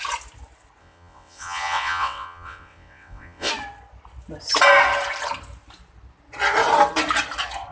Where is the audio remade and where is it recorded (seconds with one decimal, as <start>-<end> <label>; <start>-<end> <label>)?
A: 0.0-0.8 recorded; 0.8-3.5 remade; 3.5-7.7 recorded